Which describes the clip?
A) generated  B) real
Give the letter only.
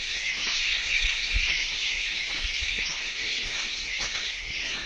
A